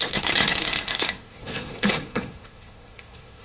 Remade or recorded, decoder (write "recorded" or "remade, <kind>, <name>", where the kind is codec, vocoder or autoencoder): remade, codec, SNAC